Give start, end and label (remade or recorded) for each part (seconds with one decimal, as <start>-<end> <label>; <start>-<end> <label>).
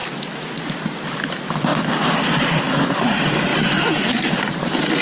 0.0-1.2 recorded; 1.2-1.7 remade; 1.7-2.6 recorded; 2.6-3.5 remade; 3.5-4.2 recorded; 4.2-5.0 remade